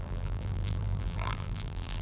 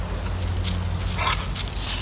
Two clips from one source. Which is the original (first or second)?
second